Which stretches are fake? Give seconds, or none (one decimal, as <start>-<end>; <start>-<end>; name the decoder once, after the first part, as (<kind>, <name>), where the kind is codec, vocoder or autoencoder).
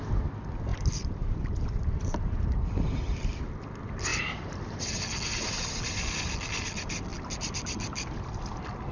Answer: 0.7-2.4 (vocoder, BigVGAN v2); 4.1-4.8